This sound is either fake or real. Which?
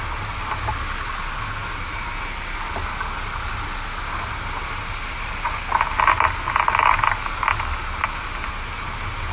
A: real